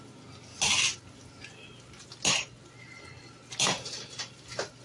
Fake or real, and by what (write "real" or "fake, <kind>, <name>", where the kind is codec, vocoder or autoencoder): real